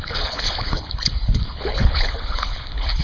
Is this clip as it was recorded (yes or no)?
no